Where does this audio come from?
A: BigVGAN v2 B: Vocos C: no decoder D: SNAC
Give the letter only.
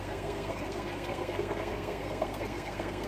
D